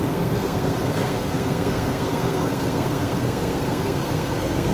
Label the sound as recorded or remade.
remade